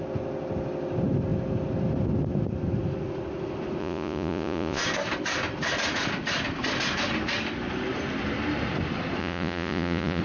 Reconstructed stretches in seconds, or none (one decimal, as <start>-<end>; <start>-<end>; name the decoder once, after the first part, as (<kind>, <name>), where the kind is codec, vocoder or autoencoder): 3.8-4.8 (vocoder, Vocos); 9.2-10.2